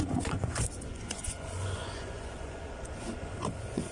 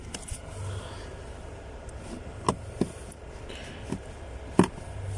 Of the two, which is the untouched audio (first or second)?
second